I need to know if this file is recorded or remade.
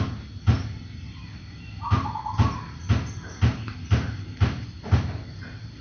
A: recorded